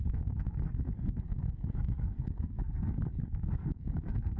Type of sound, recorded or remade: remade